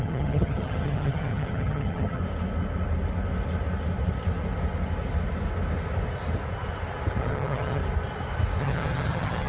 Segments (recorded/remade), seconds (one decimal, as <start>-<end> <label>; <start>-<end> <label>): 0.0-2.2 remade; 2.2-7.2 recorded; 7.2-7.8 remade; 7.8-8.6 recorded; 8.6-9.5 remade